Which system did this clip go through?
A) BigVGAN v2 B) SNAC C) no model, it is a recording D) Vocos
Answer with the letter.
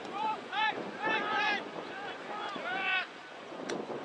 D